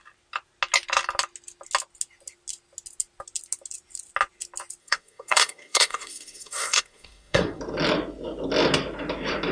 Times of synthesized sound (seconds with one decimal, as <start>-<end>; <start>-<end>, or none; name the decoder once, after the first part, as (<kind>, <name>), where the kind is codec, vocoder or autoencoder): 4.8-7.6 (codec, SNAC)